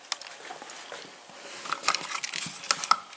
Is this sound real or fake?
real